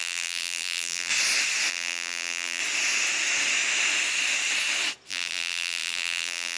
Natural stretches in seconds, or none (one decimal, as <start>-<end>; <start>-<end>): 1.1-1.7; 2.6-5.1